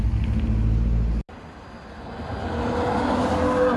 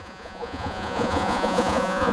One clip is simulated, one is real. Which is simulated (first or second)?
second